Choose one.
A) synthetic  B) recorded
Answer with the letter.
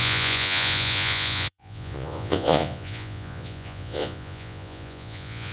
A